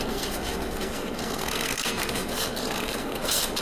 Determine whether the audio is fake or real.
fake